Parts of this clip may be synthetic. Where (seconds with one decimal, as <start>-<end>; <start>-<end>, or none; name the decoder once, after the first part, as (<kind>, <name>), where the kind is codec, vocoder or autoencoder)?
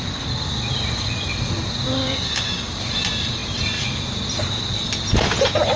2.0-2.7 (codec, DAC)